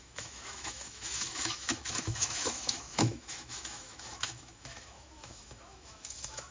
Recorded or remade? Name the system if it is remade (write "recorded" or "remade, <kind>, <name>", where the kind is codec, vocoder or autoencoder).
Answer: remade, autoencoder, DAC-VAE